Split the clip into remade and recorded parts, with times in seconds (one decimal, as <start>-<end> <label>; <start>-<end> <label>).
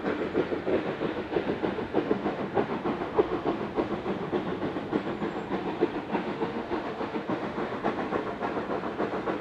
0.0-0.7 recorded; 0.7-4.3 remade; 4.3-6.1 recorded; 6.1-7.8 remade; 7.8-9.4 recorded